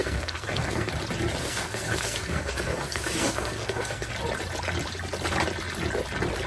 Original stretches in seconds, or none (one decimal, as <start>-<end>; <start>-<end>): 0.9-1.4; 4.1-6.5